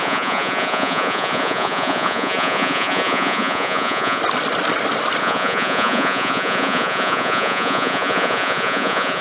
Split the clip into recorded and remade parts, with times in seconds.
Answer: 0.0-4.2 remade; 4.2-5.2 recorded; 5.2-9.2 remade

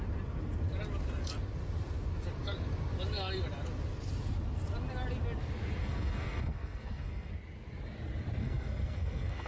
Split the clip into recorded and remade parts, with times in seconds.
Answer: 0.0-5.8 recorded; 5.8-7.3 remade; 7.3-8.4 recorded; 8.4-9.5 remade

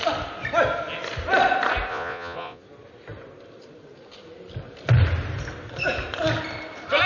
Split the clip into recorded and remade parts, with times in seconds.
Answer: 0.0-1.9 recorded; 1.9-2.6 remade; 2.6-7.1 recorded

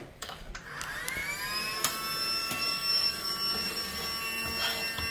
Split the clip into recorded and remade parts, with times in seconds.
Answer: 0.0-0.5 remade; 0.5-2.4 recorded; 2.4-3.3 remade; 3.3-5.1 recorded

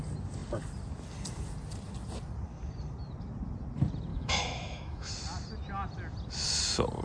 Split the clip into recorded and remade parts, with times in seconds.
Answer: 0.0-4.1 recorded; 4.1-5.1 remade; 5.1-7.0 recorded

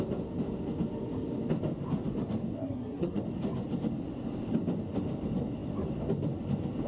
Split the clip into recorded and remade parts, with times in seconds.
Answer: 0.0-2.6 recorded; 2.6-3.2 remade; 3.2-6.9 recorded

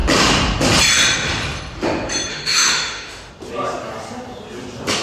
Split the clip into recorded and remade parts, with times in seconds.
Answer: 0.0-2.3 recorded; 2.3-3.3 remade; 3.3-5.0 recorded